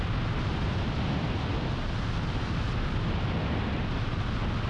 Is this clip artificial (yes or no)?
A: no